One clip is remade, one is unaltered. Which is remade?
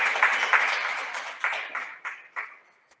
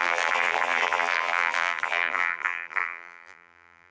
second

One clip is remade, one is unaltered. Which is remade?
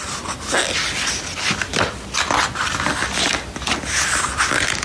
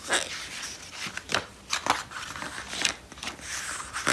second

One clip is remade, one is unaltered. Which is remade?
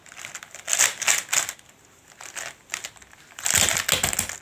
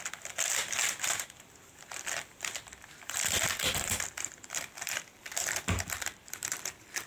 second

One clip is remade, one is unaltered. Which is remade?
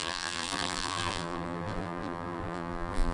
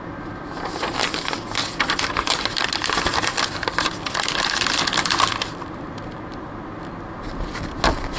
first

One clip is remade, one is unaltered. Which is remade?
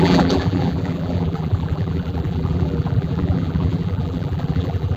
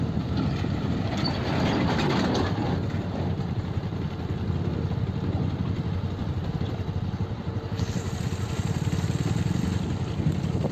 first